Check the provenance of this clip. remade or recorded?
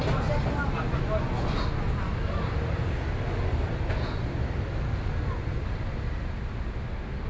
recorded